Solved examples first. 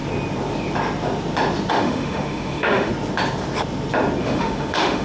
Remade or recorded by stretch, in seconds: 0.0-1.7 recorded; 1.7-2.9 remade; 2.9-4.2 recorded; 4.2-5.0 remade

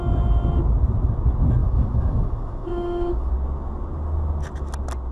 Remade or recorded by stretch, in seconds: 0.0-1.6 recorded; 1.6-3.3 remade; 3.3-5.1 recorded